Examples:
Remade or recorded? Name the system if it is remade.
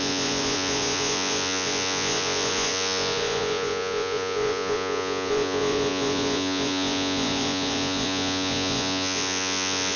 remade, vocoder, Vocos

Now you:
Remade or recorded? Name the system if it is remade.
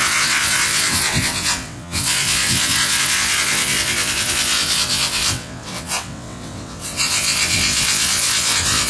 remade, vocoder, WaveNeXt